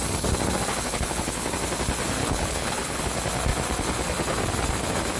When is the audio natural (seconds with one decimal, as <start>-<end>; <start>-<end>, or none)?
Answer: 0.0-0.7; 1.5-2.2; 3.0-5.2

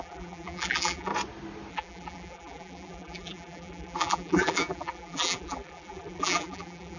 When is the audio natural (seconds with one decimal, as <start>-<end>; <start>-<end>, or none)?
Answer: 1.1-1.7

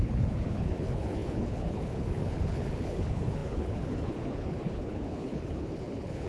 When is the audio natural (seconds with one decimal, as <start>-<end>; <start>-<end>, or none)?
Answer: none

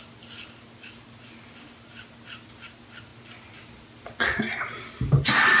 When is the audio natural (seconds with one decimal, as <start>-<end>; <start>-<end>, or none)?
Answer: 0.0-5.6

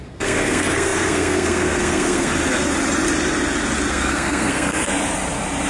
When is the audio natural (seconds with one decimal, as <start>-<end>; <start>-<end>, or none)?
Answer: 2.3-3.9; 4.9-5.7

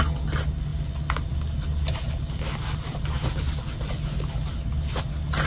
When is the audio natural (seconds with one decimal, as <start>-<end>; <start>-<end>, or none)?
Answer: 0.0-5.5

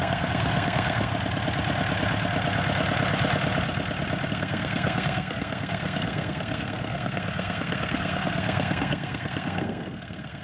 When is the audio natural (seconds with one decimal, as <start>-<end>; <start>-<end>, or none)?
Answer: 1.1-4.3

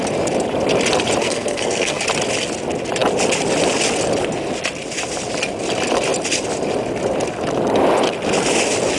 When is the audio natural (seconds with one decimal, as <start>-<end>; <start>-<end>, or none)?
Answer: 0.0-1.2; 2.0-9.0